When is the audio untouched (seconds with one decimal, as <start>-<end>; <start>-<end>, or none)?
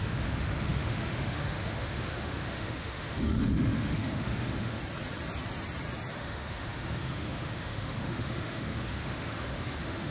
4.8-6.1